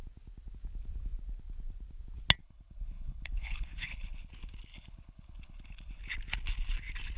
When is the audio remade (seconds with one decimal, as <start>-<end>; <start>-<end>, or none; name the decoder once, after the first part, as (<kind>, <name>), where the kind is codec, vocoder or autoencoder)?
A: 2.4-4.3 (codec, HILCodec); 4.7-6.0